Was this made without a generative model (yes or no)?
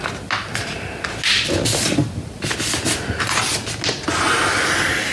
yes